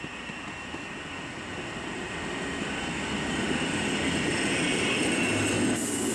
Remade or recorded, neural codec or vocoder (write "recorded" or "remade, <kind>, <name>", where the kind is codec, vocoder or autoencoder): recorded